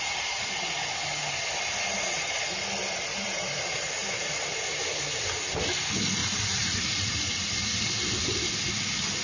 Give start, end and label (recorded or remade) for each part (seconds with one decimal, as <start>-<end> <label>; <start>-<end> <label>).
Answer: 0.0-3.1 recorded; 3.1-4.1 remade; 4.1-6.2 recorded; 6.2-7.2 remade; 7.2-9.2 recorded